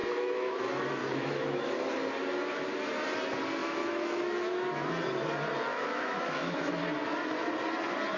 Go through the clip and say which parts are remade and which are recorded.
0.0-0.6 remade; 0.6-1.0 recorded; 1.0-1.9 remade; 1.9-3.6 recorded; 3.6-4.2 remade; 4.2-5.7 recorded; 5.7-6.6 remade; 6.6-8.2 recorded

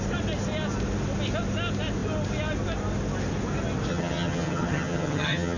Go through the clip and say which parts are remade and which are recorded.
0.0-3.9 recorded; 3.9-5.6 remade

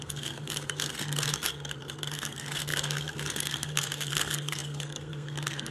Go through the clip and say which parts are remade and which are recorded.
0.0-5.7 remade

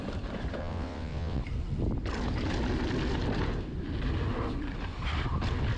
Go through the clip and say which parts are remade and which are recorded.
0.0-0.6 recorded; 0.6-1.4 remade; 1.4-5.8 recorded

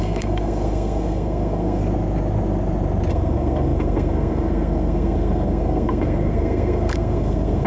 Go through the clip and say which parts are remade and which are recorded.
0.0-1.8 remade; 1.8-3.1 recorded; 3.1-7.7 remade

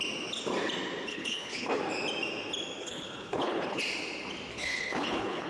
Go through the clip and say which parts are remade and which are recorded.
0.0-1.1 recorded; 1.1-1.8 remade; 1.8-2.8 recorded; 2.8-3.8 remade; 3.8-4.5 recorded; 4.5-5.5 remade

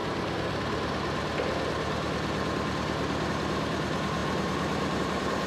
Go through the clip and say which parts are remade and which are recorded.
0.0-3.3 recorded; 3.3-5.5 remade